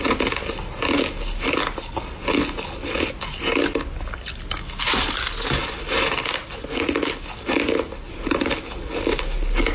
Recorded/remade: recorded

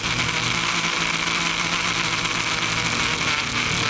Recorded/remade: recorded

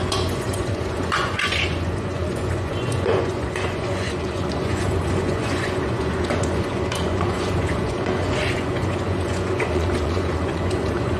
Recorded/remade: remade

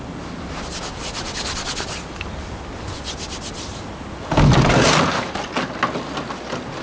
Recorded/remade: recorded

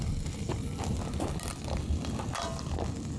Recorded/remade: recorded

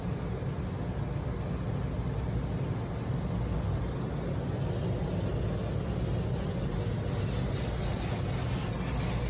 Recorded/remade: recorded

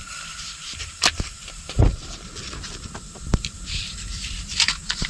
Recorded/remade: remade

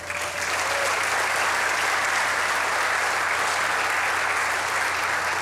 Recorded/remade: recorded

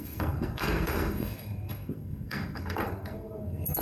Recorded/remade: remade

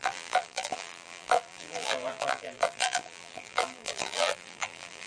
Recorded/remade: remade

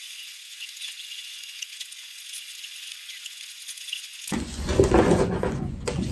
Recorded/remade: remade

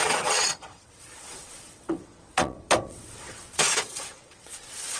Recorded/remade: remade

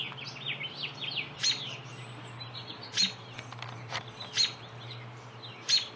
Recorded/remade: recorded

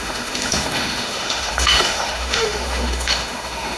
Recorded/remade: remade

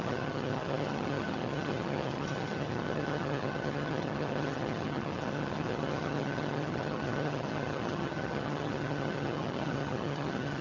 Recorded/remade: remade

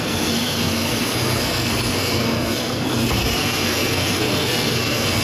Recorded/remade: remade